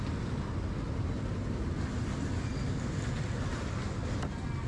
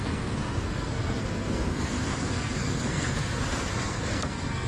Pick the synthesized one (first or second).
second